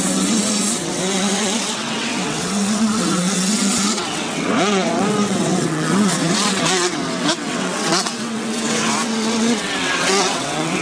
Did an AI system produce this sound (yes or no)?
yes